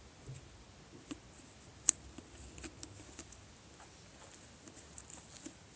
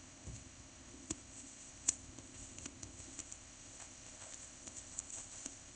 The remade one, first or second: second